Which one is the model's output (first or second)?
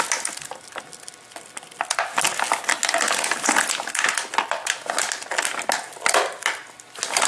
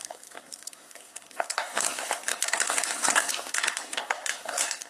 second